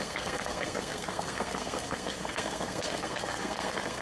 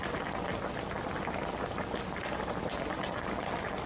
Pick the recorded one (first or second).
second